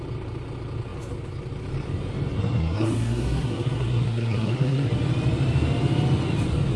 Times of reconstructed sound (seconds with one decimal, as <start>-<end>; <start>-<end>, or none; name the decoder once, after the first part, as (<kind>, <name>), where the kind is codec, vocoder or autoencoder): 2.4-4.9 (codec, SNAC)